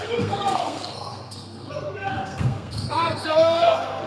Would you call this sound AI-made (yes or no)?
yes